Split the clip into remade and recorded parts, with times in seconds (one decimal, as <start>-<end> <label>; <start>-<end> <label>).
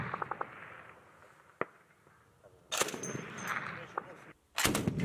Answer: 0.0-5.0 recorded